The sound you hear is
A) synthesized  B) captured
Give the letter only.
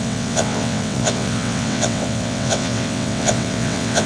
A